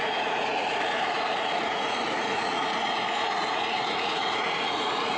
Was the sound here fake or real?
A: fake